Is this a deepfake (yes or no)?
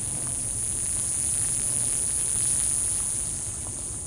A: yes